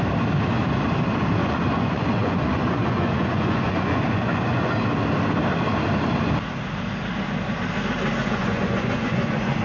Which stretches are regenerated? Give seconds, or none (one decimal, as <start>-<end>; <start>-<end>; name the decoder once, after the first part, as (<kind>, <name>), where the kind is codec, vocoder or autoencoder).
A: 1.4-4.7 (vocoder, Vocos); 8.2-9.6